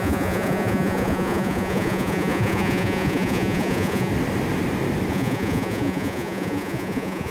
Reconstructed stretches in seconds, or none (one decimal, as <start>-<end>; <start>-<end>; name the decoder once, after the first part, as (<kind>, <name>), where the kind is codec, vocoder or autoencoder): 0.0-4.1 (vocoder, Vocos); 5.1-7.3